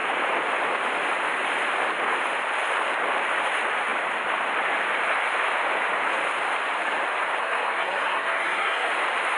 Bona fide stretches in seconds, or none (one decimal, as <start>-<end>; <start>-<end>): 0.0-7.4; 8.9-9.4